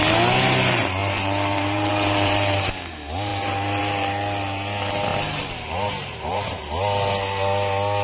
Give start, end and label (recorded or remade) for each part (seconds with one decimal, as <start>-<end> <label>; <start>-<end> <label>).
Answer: 0.0-1.0 recorded; 1.0-2.7 remade; 2.7-5.1 recorded; 5.1-6.6 remade; 6.6-8.0 recorded